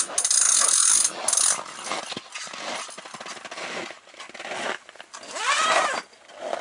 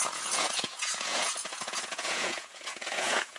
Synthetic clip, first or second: second